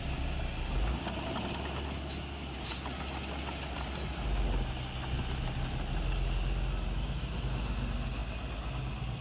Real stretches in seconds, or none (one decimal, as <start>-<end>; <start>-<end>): 0.0-9.2